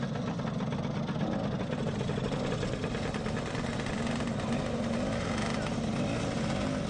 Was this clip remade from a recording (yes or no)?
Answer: no